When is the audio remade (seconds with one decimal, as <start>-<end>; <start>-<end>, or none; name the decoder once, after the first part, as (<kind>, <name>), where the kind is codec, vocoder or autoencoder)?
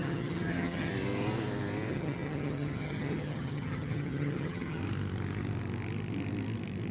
0.0-0.9 (vocoder, HiFi-GAN); 1.9-4.8